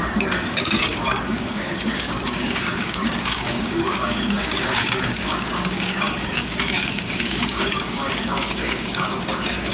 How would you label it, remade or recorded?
remade